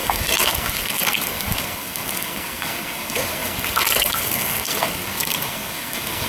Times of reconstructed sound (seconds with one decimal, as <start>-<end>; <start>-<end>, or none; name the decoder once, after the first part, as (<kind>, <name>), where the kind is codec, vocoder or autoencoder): 0.0-6.3 (codec, SNAC)